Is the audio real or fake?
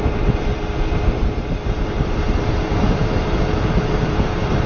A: fake